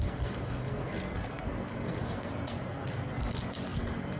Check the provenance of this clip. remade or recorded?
remade